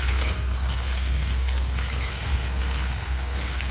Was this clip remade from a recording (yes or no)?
yes